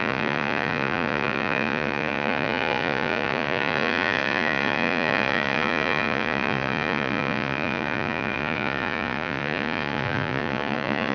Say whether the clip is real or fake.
fake